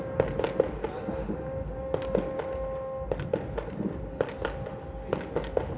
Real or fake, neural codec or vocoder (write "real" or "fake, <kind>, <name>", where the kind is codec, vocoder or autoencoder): real